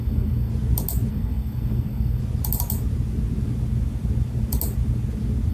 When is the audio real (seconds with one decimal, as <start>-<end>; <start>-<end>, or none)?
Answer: 0.5-1.1; 2.2-5.5